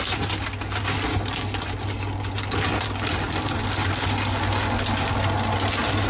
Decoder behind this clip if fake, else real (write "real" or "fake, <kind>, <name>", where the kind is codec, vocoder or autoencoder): real